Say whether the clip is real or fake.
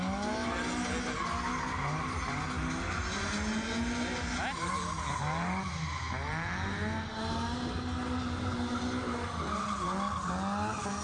real